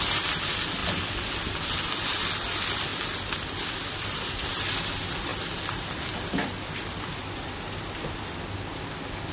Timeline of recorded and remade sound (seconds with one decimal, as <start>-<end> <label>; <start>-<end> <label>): 0.0-2.9 recorded; 2.9-4.5 remade; 4.5-9.3 recorded